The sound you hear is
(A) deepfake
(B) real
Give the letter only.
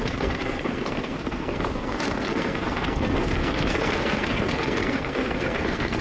A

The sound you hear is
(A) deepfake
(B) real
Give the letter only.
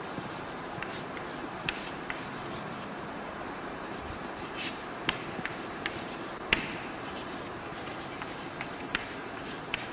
A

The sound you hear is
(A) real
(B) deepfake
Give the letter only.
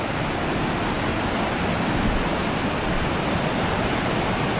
A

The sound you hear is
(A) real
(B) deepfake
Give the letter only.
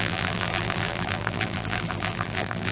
B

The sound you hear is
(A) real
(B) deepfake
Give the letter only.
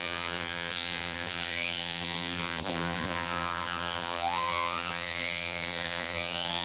B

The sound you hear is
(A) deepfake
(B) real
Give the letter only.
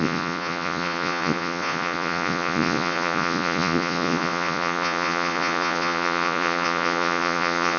A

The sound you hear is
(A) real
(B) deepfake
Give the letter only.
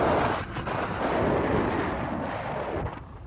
A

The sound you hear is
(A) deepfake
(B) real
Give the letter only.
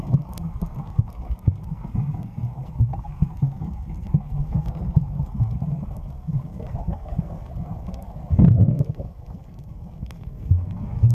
A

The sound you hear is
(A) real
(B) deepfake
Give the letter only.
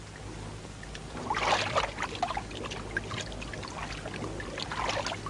A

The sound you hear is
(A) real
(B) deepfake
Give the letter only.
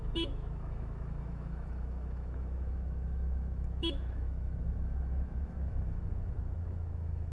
B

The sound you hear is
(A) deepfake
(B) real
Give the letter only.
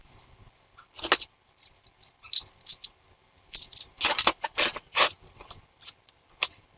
B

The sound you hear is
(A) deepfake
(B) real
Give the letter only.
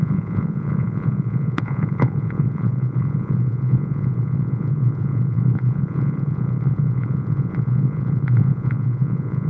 A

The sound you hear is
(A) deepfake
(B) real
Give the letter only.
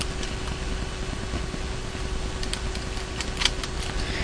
B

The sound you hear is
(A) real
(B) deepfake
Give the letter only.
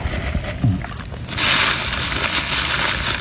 A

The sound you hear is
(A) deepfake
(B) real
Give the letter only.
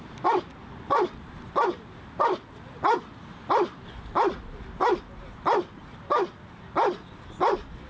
B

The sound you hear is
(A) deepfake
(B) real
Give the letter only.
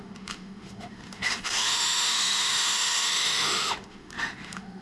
A